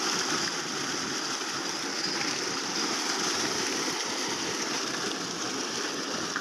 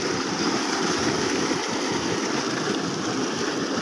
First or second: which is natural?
first